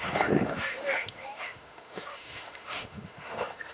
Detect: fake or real fake